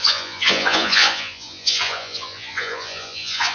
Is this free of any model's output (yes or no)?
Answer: no